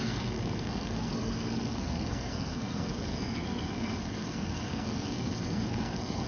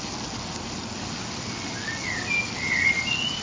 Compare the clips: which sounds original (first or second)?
second